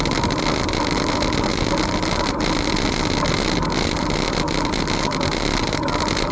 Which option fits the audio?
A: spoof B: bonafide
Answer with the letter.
B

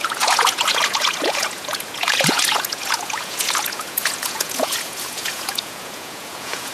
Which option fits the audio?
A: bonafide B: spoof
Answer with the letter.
B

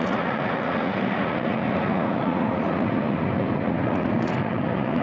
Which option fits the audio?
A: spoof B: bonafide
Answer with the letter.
A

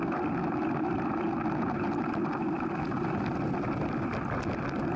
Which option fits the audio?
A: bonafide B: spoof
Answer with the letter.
A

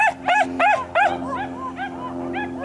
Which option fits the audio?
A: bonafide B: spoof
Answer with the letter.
A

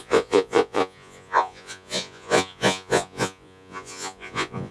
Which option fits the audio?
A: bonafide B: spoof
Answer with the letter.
B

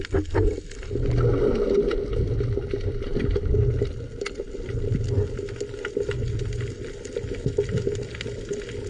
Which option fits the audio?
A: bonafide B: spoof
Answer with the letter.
A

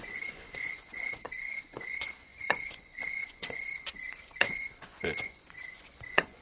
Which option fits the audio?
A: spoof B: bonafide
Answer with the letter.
A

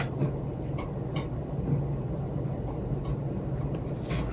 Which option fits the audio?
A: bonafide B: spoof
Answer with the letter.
A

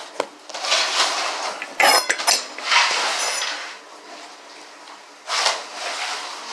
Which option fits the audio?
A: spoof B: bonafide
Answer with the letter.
B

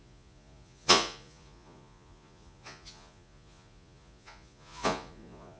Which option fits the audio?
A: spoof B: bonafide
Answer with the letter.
A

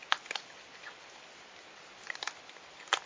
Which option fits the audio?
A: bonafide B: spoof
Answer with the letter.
A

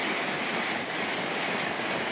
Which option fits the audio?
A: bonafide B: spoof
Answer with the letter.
A